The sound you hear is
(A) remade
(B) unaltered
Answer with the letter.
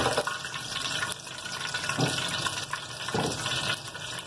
B